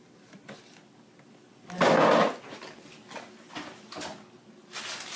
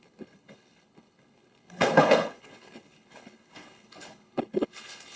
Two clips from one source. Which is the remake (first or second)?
second